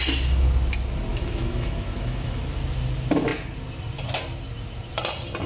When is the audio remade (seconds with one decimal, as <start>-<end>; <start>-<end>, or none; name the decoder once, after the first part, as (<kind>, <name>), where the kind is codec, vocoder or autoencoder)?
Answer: 1.1-2.4 (autoencoder, DAC-VAE)